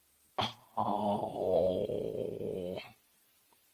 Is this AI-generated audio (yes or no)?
no